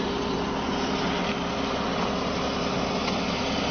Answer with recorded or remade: recorded